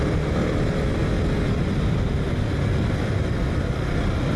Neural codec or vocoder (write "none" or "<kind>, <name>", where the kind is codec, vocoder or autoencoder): none